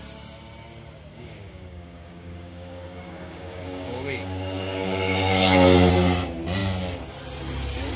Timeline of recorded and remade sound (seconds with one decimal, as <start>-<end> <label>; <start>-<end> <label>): 0.0-1.1 recorded; 1.1-5.9 remade; 5.9-8.0 recorded